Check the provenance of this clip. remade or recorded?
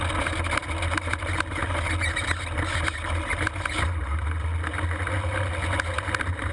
recorded